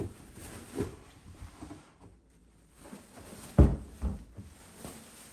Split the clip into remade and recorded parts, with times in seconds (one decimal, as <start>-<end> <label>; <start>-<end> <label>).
0.0-0.9 recorded; 0.9-1.9 remade; 1.9-2.4 recorded; 2.4-3.0 remade; 3.0-5.3 recorded